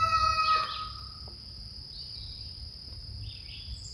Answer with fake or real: real